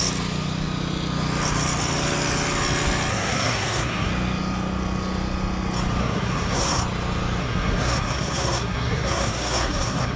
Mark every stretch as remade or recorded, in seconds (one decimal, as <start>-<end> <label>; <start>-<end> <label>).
0.0-3.1 recorded; 3.1-4.1 remade; 4.1-6.0 recorded; 6.0-6.8 remade; 6.8-7.4 recorded; 7.4-10.2 remade